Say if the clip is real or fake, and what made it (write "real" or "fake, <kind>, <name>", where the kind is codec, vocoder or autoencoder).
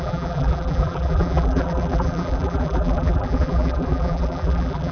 fake, vocoder, BigVGAN v2